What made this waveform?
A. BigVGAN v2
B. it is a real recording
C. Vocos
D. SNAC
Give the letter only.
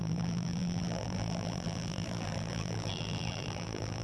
A